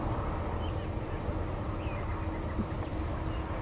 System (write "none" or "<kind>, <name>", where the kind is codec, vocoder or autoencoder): none